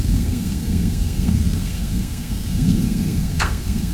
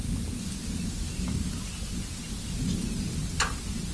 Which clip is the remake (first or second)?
first